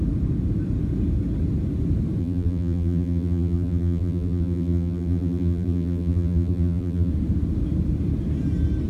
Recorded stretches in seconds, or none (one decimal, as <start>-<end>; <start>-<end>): 0.0-2.2; 7.1-8.9